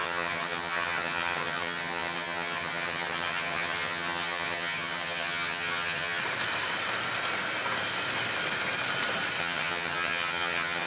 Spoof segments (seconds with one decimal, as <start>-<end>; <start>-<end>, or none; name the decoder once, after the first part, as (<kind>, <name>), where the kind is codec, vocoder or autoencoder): 0.0-6.2 (vocoder, HiFi-GAN); 9.4-10.9